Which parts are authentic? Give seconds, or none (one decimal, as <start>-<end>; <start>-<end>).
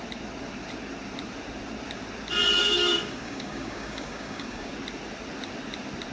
0.0-2.6; 4.7-6.1